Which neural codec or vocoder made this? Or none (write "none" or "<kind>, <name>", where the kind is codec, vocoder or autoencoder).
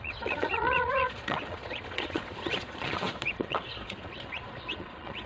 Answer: vocoder, Vocos